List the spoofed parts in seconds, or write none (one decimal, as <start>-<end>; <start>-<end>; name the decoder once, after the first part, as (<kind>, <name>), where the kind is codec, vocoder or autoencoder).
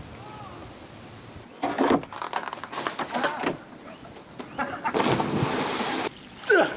none